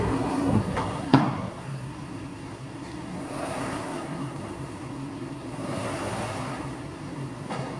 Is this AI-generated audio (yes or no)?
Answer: yes